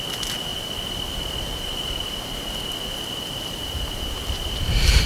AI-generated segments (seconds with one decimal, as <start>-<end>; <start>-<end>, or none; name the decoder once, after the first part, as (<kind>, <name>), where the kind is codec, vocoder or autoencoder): 0.5-2.8 (vocoder, BigVGAN v2)

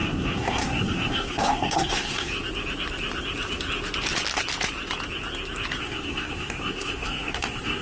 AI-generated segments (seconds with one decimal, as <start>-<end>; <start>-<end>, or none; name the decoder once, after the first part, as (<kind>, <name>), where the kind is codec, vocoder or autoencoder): 0.0-2.3 (codec, SNAC); 5.8-7.8

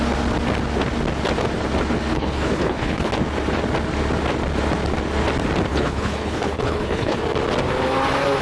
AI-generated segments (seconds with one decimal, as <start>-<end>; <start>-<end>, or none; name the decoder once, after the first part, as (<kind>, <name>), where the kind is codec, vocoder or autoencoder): 2.1-3.1 (codec, HILCodec); 5.7-7.2

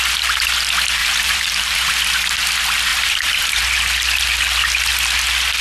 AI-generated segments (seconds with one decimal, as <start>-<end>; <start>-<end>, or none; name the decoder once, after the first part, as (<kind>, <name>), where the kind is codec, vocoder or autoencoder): 1.0-1.9 (vocoder, BigVGAN v2); 2.9-3.6

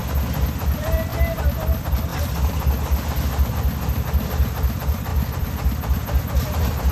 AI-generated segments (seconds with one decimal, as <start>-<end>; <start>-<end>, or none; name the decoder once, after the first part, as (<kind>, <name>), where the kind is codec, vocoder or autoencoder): 0.6-1.1 (vocoder, BigVGAN v2); 1.6-6.9

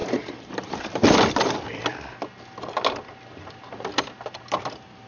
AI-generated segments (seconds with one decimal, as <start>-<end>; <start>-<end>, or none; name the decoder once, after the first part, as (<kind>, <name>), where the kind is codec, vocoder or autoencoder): 0.7-1.7 (vocoder, BigVGAN v2)

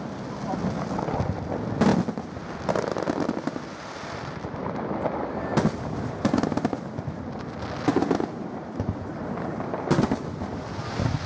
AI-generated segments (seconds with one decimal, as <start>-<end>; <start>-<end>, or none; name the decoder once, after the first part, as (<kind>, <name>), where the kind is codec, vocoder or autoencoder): none

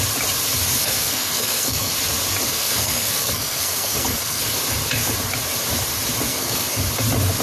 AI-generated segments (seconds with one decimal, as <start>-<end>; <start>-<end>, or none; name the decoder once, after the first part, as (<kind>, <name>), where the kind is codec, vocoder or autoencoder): 0.8-1.9 (codec, SNAC); 2.5-4.4; 6.3-6.8